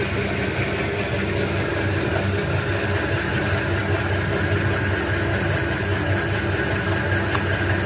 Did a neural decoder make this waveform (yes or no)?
no